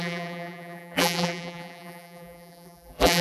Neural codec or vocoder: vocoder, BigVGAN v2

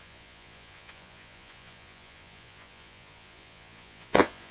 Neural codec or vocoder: vocoder, Vocos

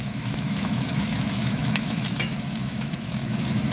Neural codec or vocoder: autoencoder, DAC-VAE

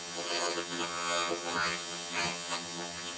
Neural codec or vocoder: vocoder, HiFi-GAN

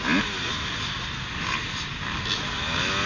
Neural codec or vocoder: none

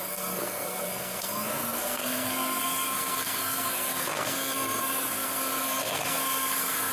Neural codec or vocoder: codec, SNAC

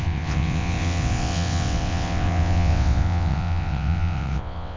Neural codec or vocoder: vocoder, WaveNeXt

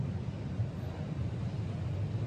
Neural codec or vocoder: none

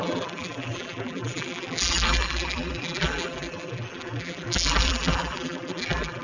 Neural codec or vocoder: vocoder, BigVGAN v2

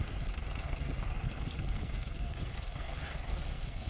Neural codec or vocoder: codec, SNAC